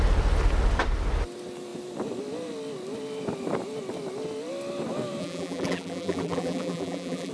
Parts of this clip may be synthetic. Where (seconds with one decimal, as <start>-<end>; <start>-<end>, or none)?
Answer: 5.2-7.3